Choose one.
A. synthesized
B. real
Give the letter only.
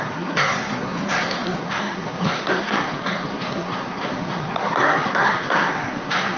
A